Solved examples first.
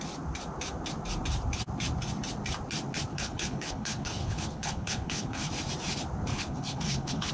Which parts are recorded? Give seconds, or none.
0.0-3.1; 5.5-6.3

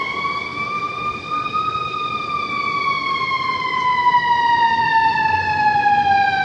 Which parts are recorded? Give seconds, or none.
0.0-0.5; 1.1-6.4

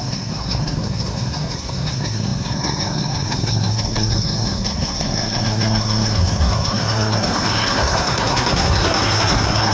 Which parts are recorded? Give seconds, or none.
none

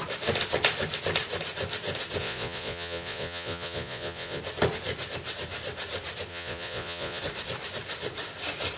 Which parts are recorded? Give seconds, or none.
0.0-2.2; 4.4-6.3; 7.2-8.8